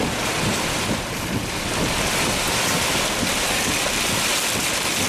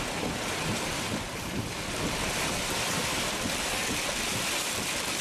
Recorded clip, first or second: first